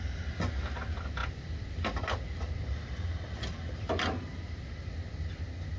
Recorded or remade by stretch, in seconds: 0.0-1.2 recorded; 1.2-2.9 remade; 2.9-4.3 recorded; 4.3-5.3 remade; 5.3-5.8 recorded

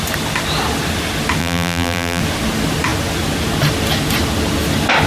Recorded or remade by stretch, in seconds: 0.0-1.4 recorded; 1.4-2.2 remade; 2.2-5.1 recorded

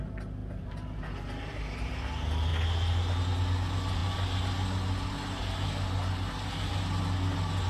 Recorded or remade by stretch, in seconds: 0.0-7.7 recorded

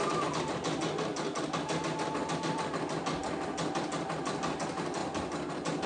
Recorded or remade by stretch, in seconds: 0.0-5.9 recorded